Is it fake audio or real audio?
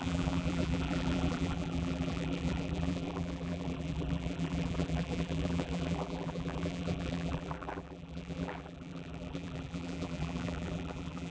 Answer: fake